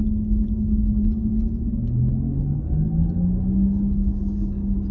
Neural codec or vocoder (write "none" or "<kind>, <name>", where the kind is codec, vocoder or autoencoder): none